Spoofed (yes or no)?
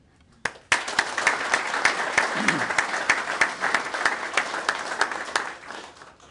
no